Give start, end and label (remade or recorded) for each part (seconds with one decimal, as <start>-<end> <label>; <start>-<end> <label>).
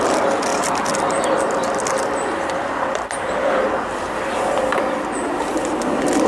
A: 0.0-0.5 recorded; 0.5-2.4 remade; 2.4-6.3 recorded